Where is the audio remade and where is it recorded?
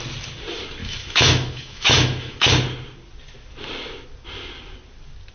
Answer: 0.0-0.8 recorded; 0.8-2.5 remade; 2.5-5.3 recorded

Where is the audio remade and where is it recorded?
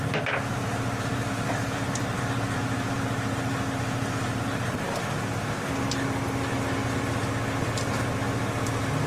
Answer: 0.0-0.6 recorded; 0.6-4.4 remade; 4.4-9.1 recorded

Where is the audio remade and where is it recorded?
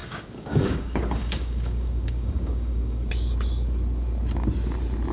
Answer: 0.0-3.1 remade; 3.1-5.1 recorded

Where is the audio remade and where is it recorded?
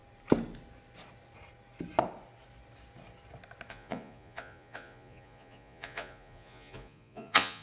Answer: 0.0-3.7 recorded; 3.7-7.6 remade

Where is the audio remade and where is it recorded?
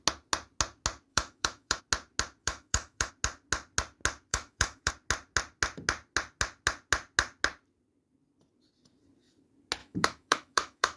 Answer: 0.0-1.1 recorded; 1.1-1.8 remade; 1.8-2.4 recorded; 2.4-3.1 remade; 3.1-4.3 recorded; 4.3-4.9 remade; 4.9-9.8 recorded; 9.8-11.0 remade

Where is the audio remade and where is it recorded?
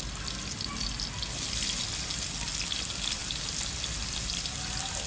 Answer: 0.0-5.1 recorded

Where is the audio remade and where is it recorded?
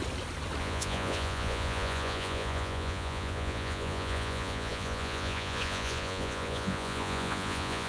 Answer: 0.0-0.6 recorded; 0.6-7.9 remade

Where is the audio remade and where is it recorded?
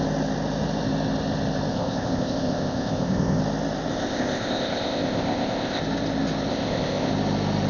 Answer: 0.0-1.7 recorded; 1.7-3.4 remade; 3.4-3.9 recorded; 3.9-5.8 remade; 5.8-6.5 recorded; 6.5-7.1 remade; 7.1-7.7 recorded